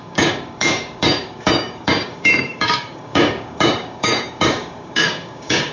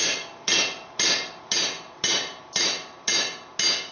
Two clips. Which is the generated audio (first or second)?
first